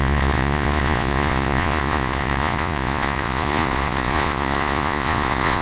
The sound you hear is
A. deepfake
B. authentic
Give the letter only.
A